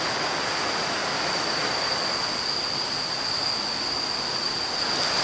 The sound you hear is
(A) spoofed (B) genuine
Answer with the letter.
B